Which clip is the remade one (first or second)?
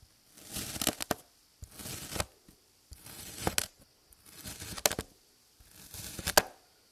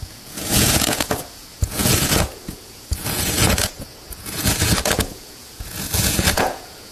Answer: second